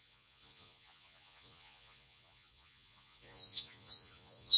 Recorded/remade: remade